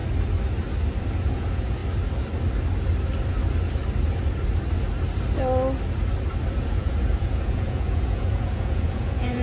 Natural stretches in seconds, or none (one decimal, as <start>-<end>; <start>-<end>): 0.0-1.1; 1.8-6.6